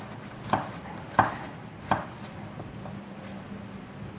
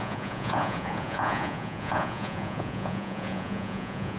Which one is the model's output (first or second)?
second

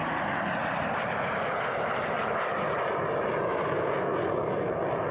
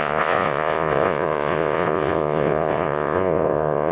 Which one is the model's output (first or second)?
second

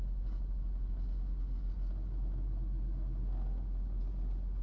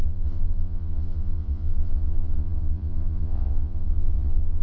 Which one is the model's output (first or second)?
second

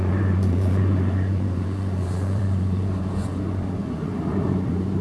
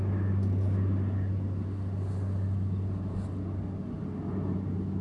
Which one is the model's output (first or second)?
first